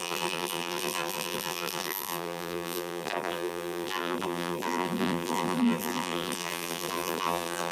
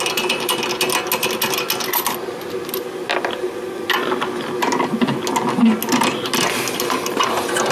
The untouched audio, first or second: second